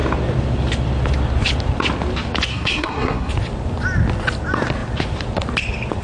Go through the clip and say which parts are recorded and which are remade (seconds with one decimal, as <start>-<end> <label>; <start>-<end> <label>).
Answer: 0.0-2.5 recorded; 2.5-3.3 remade; 3.3-6.0 recorded